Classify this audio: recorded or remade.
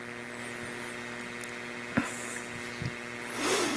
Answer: recorded